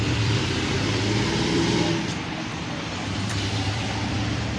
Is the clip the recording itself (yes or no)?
no